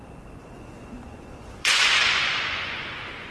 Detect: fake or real fake